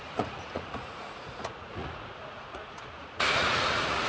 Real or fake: fake